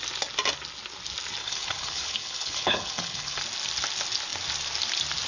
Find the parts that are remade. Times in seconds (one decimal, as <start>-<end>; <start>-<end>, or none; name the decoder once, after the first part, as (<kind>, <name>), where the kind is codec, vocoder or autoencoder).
1.4-3.4 (codec, HILCodec)